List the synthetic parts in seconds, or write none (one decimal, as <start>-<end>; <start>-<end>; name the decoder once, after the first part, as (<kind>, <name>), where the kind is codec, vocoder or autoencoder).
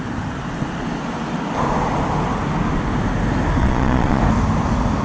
3.6-4.2 (vocoder, Vocos)